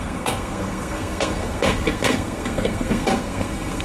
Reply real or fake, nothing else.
fake